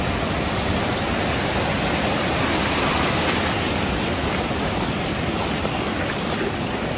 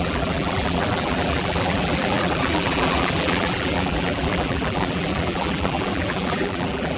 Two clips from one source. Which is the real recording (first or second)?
first